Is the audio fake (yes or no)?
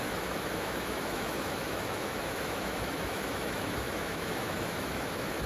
yes